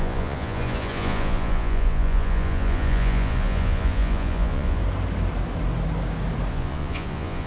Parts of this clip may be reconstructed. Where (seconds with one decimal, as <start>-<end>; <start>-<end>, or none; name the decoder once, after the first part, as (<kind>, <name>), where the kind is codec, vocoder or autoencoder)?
0.0-4.8 (vocoder, Vocos); 6.5-7.5